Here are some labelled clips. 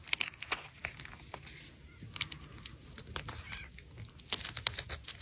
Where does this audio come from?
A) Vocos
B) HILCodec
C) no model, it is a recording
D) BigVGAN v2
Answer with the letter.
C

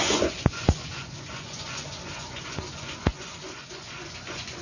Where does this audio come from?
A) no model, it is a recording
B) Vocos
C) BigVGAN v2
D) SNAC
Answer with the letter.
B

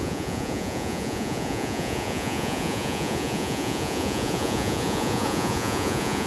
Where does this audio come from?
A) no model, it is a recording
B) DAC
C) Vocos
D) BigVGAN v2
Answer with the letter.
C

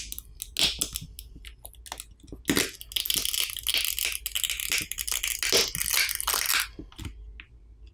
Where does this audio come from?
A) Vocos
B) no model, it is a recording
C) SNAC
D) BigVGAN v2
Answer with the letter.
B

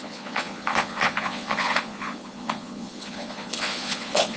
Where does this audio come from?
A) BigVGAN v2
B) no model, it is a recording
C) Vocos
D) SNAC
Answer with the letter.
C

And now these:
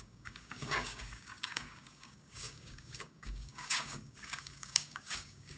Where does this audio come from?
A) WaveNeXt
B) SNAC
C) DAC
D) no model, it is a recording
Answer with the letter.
C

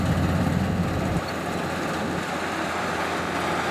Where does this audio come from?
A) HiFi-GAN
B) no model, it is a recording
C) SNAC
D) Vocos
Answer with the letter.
B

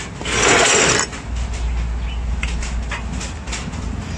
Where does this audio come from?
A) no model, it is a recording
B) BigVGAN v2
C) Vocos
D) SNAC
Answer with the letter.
A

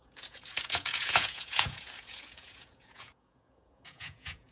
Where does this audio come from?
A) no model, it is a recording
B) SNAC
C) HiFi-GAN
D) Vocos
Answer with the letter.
D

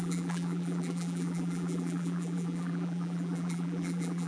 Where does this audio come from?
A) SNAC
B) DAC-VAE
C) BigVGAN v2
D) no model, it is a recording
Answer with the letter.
C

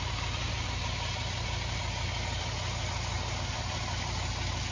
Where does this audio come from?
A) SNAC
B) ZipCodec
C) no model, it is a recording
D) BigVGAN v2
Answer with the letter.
C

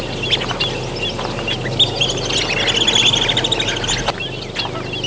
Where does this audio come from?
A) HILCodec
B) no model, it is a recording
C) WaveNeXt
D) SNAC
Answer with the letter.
B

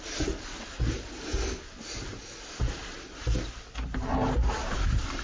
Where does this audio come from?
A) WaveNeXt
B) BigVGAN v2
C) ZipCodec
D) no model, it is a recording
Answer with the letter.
D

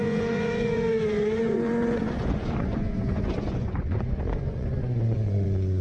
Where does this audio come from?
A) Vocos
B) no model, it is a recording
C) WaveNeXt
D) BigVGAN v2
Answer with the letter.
A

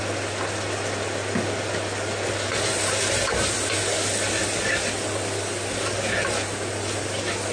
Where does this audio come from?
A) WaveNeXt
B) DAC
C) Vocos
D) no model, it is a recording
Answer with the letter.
D